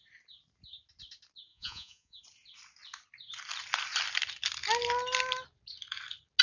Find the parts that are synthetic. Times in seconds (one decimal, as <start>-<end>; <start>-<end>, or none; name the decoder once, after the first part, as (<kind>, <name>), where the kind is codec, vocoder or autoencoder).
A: 1.5-2.2 (vocoder, Vocos)

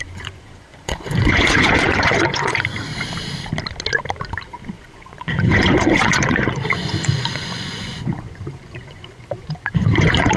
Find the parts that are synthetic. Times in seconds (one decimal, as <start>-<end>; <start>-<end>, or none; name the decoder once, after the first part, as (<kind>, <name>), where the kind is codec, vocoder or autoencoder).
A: 0.0-2.9 (vocoder, Vocos); 4.7-10.4

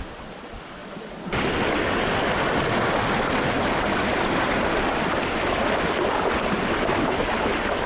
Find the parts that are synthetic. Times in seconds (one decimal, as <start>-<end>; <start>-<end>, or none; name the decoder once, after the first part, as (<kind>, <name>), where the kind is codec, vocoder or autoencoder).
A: none

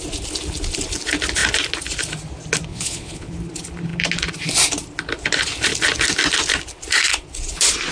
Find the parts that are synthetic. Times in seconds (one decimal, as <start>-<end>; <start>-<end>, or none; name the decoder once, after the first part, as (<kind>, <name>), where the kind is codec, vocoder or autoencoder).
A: 2.7-3.3 (vocoder, Vocos)

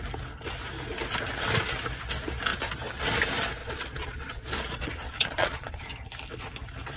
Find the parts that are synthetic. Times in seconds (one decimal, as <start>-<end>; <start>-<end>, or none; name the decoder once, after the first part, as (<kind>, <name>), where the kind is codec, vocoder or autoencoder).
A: 3.6-5.8 (vocoder, Vocos)

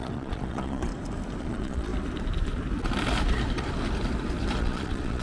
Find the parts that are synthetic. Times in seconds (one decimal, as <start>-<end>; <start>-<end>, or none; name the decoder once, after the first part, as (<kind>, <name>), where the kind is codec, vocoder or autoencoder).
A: 0.0-0.9 (vocoder, Vocos); 1.4-1.9; 4.6-5.2

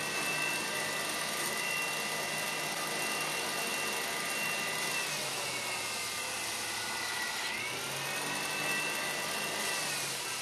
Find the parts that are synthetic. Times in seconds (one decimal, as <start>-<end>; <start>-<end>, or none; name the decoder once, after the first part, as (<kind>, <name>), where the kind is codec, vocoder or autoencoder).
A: none